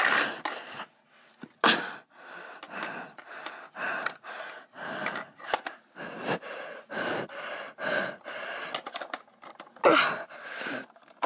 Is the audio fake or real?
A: real